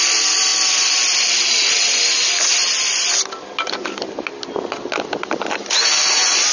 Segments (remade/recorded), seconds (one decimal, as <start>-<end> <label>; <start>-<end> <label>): 0.0-6.5 recorded